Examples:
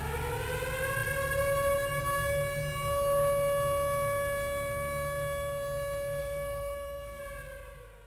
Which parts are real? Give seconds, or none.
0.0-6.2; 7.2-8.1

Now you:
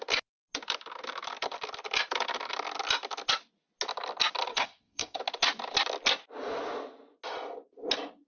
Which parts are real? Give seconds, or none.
0.0-4.5; 5.2-8.3

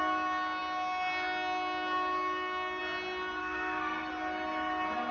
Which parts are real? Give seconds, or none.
0.0-3.4; 4.1-5.1